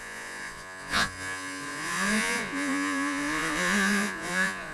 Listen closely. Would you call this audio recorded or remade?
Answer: remade